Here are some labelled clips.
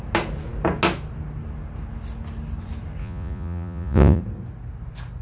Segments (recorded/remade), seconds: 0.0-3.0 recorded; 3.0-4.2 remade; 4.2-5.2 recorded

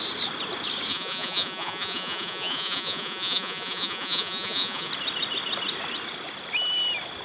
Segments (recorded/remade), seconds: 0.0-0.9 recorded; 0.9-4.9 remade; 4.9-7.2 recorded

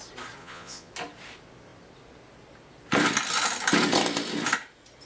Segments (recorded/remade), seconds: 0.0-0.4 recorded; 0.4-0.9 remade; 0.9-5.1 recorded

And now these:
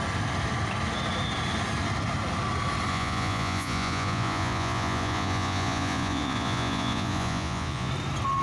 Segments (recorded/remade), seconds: 0.0-2.9 recorded; 2.9-7.9 remade; 7.9-8.4 recorded

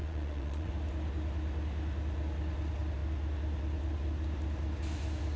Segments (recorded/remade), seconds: 0.0-0.7 remade; 0.7-5.4 recorded

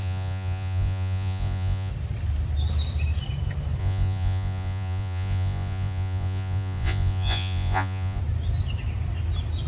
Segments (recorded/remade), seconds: 0.0-1.9 remade; 1.9-3.8 recorded; 3.8-8.2 remade; 8.2-9.7 recorded